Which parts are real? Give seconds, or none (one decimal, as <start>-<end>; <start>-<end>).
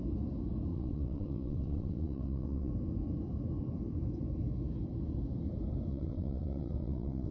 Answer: 0.0-0.7; 2.7-5.9